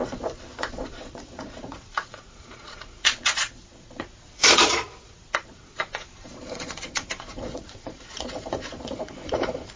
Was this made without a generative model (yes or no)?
no